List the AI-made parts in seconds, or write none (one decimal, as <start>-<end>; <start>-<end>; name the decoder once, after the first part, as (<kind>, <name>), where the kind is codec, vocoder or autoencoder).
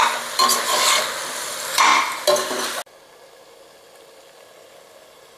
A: 0.0-0.4 (vocoder, BigVGAN v2); 1.4-1.9